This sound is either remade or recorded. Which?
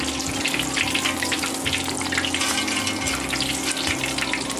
recorded